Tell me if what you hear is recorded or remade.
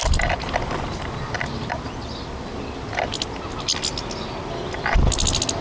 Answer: recorded